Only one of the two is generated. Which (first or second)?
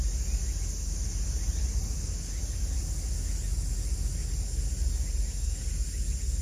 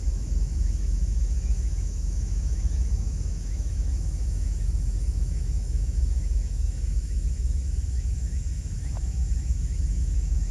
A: second